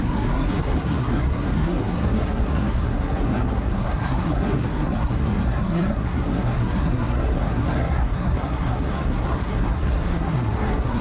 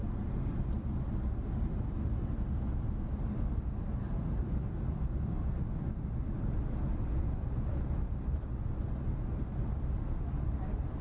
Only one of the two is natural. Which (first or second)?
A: second